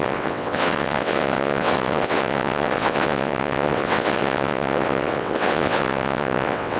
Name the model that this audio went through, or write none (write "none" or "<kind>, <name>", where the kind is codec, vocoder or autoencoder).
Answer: vocoder, WaveNeXt